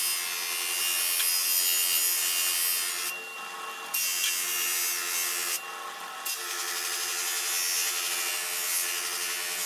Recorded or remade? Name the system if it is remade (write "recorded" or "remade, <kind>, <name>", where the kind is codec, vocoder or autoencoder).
recorded